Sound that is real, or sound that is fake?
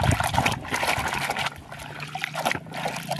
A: real